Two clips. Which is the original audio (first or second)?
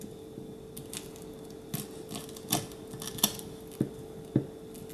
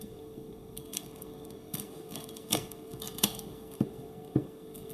first